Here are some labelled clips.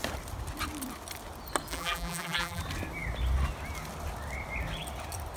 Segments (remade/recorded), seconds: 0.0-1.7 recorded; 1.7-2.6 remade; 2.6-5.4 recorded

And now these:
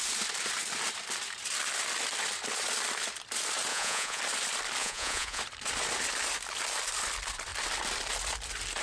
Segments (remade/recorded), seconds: 0.0-3.7 recorded; 3.7-4.2 remade; 4.2-4.8 recorded; 4.8-5.4 remade; 5.4-8.8 recorded

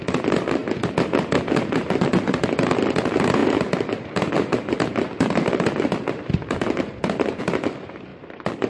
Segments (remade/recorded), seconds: 0.0-8.1 remade; 8.1-8.7 recorded

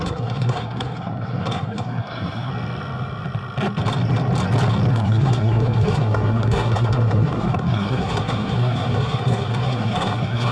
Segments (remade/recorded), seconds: 0.0-2.5 remade; 2.5-4.9 recorded; 4.9-10.5 remade

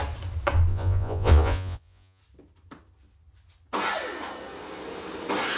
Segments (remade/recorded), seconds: 0.0-0.7 recorded; 0.7-2.2 remade; 2.2-5.6 recorded

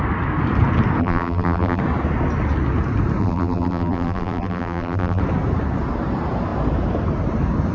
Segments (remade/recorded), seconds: 0.0-1.0 recorded; 1.0-1.8 remade; 1.8-3.2 recorded; 3.2-5.2 remade; 5.2-7.7 recorded